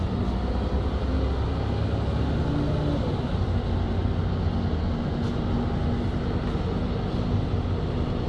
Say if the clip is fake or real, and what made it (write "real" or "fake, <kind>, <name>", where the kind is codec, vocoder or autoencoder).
real